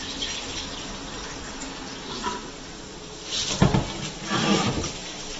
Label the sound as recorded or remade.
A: recorded